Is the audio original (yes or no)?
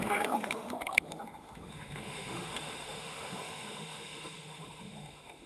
no